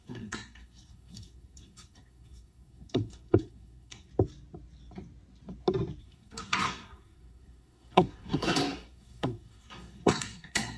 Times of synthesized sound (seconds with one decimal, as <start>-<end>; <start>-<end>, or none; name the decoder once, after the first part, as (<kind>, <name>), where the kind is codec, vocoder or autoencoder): 0.0-4.1 (codec, SNAC); 6.0-10.8